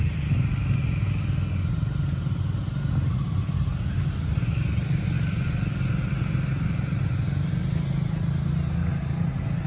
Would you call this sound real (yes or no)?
yes